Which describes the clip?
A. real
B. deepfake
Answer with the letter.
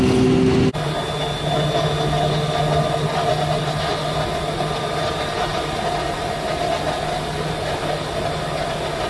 A